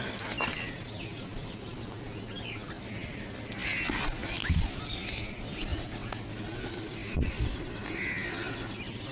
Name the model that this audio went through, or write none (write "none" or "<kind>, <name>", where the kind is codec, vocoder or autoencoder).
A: none